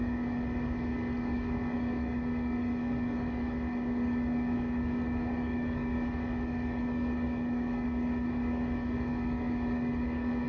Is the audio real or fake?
fake